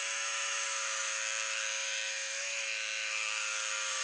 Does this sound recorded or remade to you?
remade